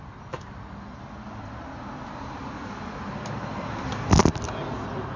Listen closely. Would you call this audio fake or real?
real